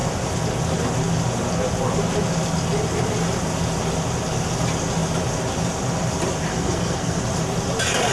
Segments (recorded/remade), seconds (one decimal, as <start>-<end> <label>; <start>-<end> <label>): 0.0-6.5 recorded; 6.5-7.2 remade; 7.2-8.1 recorded